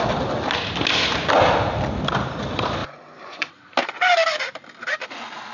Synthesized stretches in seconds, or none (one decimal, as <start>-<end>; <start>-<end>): 2.8-3.5